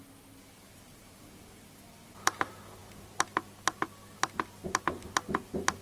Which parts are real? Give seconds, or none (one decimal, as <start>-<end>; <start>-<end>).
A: 0.0-5.8